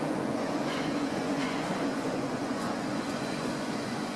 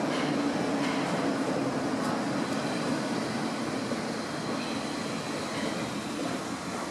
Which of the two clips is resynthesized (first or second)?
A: first